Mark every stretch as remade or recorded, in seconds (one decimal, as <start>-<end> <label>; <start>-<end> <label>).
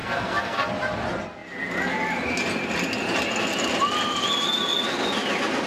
0.0-0.7 remade; 0.7-5.7 recorded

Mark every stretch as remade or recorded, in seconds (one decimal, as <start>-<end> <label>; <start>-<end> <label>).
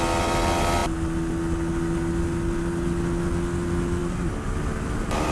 0.0-5.3 recorded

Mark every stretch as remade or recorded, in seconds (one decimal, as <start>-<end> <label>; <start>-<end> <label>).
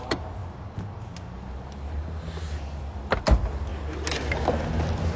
0.0-5.2 recorded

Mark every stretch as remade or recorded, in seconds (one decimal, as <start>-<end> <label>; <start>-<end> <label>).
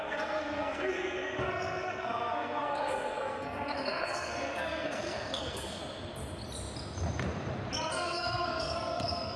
0.0-5.8 remade; 5.8-7.9 recorded; 7.9-9.4 remade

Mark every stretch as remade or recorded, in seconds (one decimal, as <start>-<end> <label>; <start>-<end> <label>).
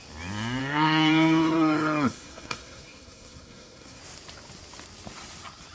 0.0-0.6 recorded; 0.6-4.0 remade; 4.0-5.7 recorded